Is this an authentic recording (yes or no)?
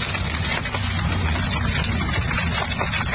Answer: no